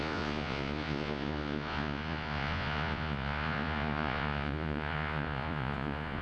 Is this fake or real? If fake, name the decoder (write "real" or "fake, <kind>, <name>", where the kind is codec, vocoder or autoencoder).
fake, vocoder, Vocos